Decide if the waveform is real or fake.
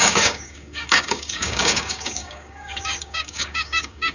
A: fake